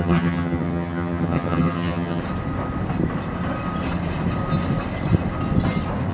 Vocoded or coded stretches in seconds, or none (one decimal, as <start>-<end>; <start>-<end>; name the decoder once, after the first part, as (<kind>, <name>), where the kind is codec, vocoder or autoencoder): 0.0-2.2 (vocoder, HiFi-GAN)